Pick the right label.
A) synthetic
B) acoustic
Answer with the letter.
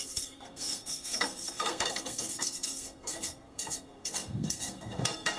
A